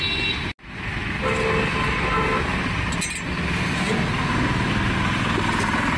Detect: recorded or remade recorded